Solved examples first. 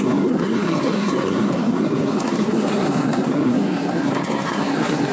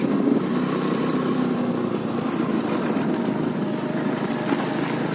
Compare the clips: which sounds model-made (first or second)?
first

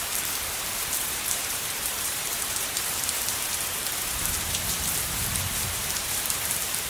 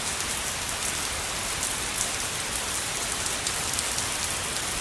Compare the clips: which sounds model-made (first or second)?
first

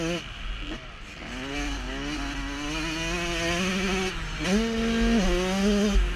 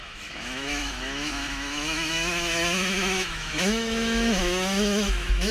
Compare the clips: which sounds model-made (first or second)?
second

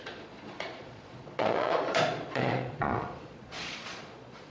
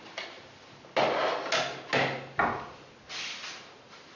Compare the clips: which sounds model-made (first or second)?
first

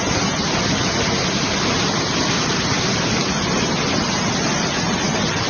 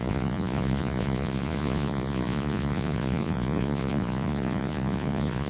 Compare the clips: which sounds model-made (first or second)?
second